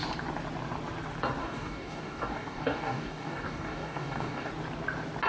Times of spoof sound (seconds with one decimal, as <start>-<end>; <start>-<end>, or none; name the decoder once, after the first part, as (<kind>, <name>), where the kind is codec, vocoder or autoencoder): 1.4-4.5 (codec, DAC)